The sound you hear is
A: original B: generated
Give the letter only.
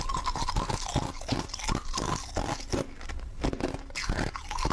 A